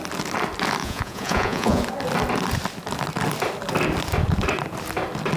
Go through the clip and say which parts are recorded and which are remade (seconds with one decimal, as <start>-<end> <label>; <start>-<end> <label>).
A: 0.0-0.8 recorded; 0.8-1.8 remade; 1.8-5.4 recorded